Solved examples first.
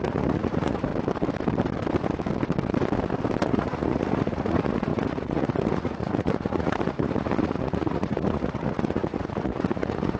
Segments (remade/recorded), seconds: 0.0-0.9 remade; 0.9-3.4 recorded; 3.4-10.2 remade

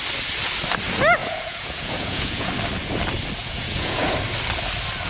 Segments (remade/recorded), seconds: 0.0-1.2 recorded; 1.2-2.5 remade; 2.5-3.4 recorded; 3.4-4.1 remade; 4.1-5.1 recorded

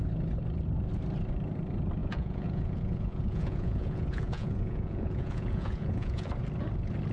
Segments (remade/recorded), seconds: 0.0-2.0 recorded; 2.0-6.3 remade; 6.3-7.1 recorded

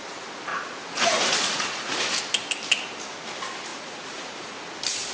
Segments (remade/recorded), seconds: 0.0-0.5 recorded; 0.5-2.0 remade; 2.0-3.7 recorded; 3.7-4.5 remade; 4.5-5.1 recorded

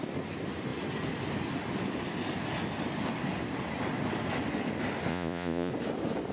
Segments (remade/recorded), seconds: 0.0-5.1 recorded; 5.1-5.7 remade; 5.7-6.3 recorded

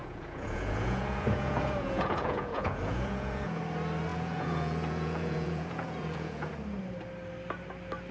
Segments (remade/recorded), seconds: 0.0-3.6 remade; 3.6-4.1 recorded; 4.1-6.5 remade; 6.5-8.1 recorded

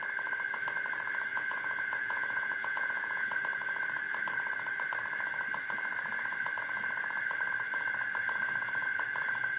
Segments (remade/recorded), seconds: 0.0-1.3 recorded; 1.3-3.3 remade; 3.3-9.6 recorded